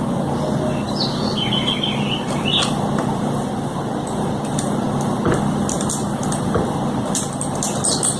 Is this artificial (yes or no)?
no